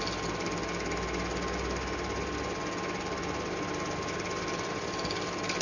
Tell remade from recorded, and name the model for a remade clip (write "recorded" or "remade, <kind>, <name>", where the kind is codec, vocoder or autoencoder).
recorded